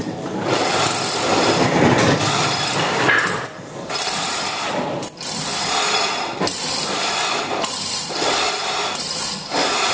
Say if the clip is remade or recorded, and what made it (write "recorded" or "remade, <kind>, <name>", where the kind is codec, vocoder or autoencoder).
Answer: remade, vocoder, BigVGAN v2